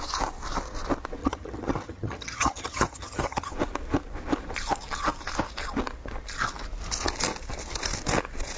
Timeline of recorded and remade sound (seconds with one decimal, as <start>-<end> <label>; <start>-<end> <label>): 0.0-1.2 recorded; 1.2-3.5 remade; 3.5-8.6 recorded